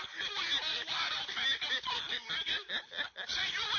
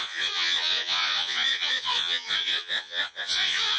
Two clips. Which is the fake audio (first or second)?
second